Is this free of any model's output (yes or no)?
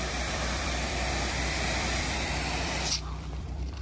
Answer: no